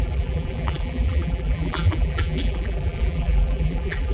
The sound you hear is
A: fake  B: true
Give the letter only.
A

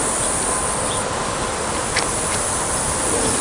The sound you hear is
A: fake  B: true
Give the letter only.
B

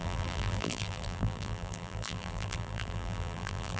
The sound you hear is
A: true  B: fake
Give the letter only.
B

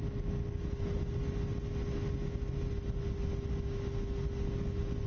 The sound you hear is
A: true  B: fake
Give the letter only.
A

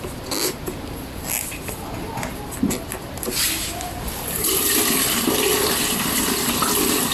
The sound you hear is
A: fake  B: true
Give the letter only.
B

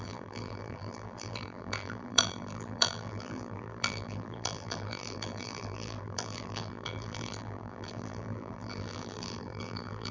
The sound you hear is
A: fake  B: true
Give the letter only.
A